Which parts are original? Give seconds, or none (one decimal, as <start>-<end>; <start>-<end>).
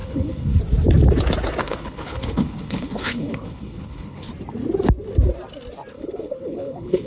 0.6-1.6; 4.3-5.9